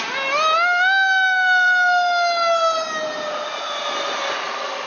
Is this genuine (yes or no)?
yes